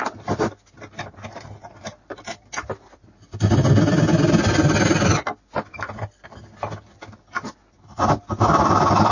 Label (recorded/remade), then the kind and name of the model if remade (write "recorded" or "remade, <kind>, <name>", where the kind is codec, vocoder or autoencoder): recorded